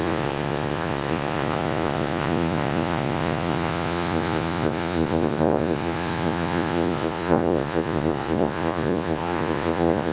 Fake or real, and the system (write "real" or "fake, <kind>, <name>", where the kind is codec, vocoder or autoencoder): fake, vocoder, Vocos